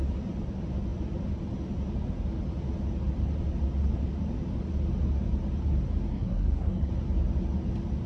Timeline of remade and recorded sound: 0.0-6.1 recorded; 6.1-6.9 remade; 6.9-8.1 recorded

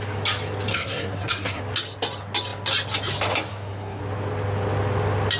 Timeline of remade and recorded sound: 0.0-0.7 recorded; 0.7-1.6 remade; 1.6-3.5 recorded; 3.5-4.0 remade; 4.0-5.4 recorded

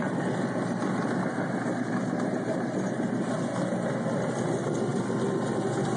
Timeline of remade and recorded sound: 0.0-6.0 recorded

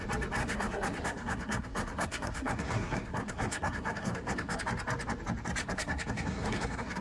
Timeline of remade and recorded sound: 0.0-0.4 recorded; 0.4-4.6 remade; 4.6-5.6 recorded; 5.6-7.0 remade